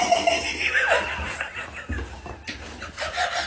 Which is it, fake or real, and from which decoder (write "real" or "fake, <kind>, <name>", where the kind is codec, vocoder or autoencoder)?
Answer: real